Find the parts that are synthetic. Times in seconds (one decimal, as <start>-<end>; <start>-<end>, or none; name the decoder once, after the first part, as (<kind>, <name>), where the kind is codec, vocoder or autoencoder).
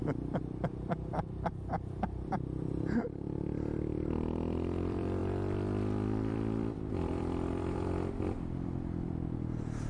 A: 1.2-9.9 (vocoder, BigVGAN v2)